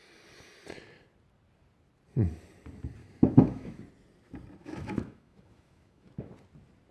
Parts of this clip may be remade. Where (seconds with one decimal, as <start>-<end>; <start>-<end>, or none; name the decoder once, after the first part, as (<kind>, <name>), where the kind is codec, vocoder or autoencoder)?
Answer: 3.0-3.8 (autoencoder, DAC-VAE); 4.6-6.3